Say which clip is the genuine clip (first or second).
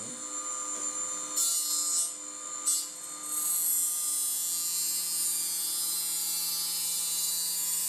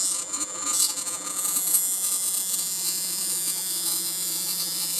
first